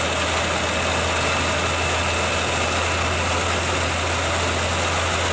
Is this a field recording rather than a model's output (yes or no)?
yes